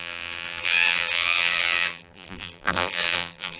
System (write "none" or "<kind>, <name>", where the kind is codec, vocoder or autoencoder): vocoder, BigVGAN v2